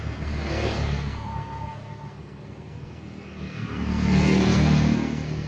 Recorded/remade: remade